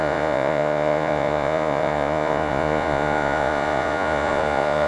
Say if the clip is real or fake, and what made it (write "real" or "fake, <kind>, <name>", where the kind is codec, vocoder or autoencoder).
fake, vocoder, Vocos